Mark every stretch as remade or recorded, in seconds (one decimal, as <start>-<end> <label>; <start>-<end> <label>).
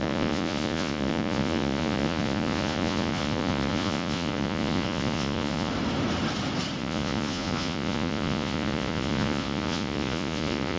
0.0-5.7 remade; 5.7-6.8 recorded; 6.8-10.8 remade